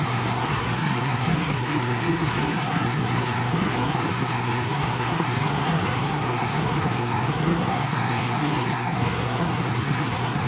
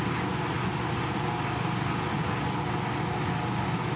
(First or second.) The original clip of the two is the second